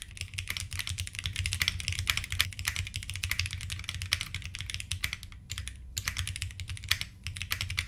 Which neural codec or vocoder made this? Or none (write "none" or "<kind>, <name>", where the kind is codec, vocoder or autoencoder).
none